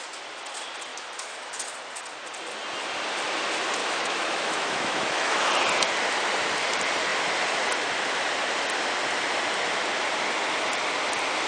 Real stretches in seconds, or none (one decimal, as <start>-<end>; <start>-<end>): 0.0-0.9; 1.5-3.8; 5.5-11.5